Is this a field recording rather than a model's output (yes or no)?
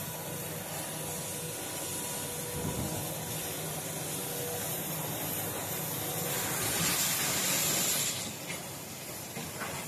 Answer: yes